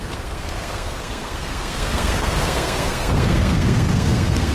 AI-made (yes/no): yes